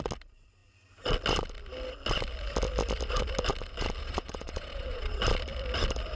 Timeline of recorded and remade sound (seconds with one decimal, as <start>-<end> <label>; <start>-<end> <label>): 0.0-4.0 recorded; 4.0-5.2 remade; 5.2-6.2 recorded